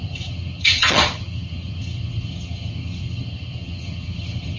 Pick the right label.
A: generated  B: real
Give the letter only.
A